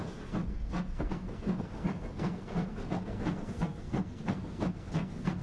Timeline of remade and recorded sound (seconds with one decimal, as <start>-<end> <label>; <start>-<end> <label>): 0.0-5.4 remade